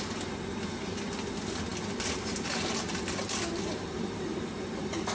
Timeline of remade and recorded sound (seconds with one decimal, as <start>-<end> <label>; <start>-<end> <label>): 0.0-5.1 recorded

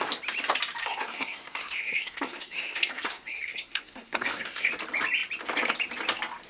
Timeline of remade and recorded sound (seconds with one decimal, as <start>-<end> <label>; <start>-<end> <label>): 0.0-0.8 recorded; 0.8-4.7 remade; 4.7-6.5 recorded

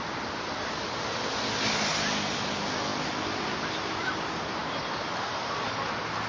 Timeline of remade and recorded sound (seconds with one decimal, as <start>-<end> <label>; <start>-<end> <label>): 0.0-6.3 recorded

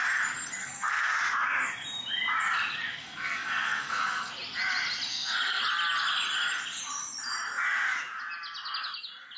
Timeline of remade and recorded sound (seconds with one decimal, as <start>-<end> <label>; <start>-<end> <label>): 0.0-0.6 recorded; 0.6-1.2 remade; 1.2-3.0 recorded; 3.0-4.3 remade; 4.3-5.1 recorded; 5.1-5.6 remade; 5.6-9.4 recorded

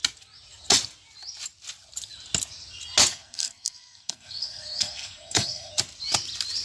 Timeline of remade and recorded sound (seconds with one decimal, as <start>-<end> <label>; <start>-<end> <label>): 0.0-3.1 recorded; 3.1-5.7 remade; 5.7-6.6 recorded